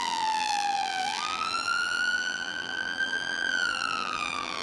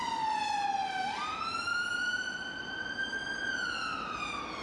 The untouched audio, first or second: second